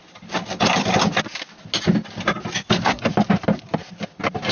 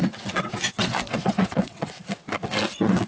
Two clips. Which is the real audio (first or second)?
first